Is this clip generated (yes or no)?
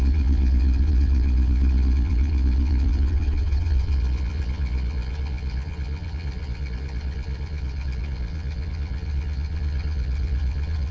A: yes